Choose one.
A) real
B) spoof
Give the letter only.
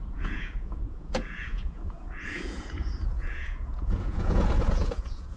B